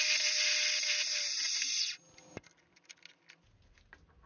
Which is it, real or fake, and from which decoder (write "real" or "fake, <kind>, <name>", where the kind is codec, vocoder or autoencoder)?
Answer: real